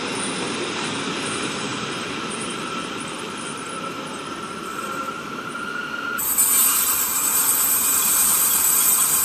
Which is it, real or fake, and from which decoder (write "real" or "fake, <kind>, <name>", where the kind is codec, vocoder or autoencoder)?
fake, vocoder, BigVGAN v2